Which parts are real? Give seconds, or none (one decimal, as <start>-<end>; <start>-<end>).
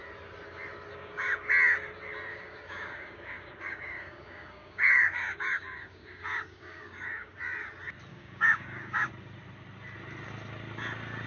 0.0-0.9; 1.5-2.3; 7.4-8.1; 9.1-11.3